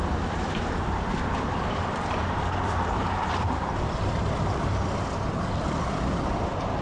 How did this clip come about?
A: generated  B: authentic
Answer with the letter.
A